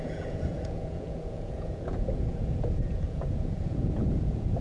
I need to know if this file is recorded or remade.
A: remade